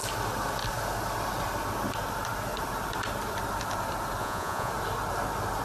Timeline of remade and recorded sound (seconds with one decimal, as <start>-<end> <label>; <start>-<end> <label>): 0.0-4.2 recorded; 4.2-4.7 remade; 4.7-5.6 recorded